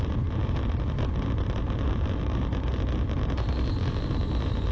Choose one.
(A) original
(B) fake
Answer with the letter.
B